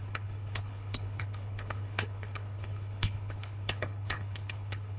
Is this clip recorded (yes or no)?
no